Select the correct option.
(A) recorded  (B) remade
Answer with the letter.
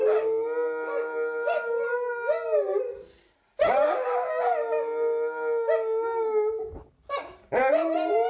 A